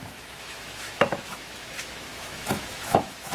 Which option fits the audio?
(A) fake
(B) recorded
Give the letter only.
A